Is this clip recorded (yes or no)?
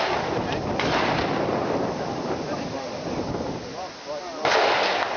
yes